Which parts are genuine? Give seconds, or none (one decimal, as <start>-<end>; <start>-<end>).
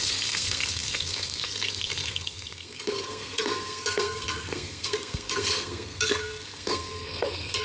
none